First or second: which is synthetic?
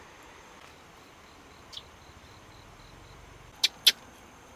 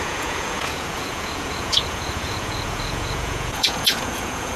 second